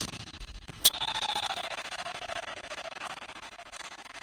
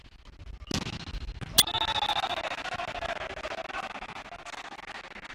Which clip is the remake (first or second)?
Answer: first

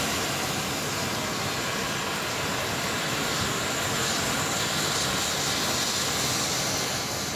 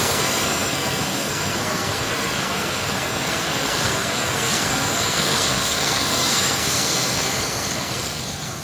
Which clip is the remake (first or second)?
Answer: second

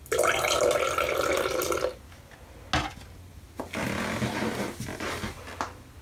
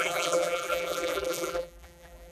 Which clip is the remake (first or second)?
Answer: second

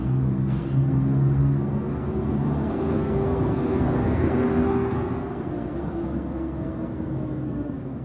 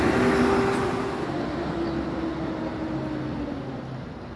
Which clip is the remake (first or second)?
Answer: first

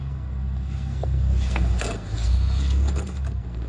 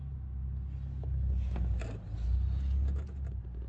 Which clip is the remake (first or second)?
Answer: first